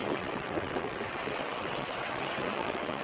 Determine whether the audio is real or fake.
fake